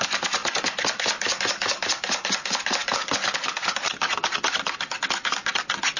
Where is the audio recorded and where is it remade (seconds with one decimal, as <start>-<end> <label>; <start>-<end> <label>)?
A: 0.0-6.0 recorded